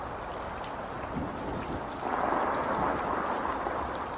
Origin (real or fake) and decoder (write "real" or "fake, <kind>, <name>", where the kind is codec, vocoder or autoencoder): real